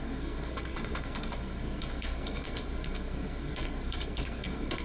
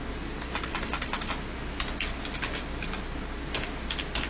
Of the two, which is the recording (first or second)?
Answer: second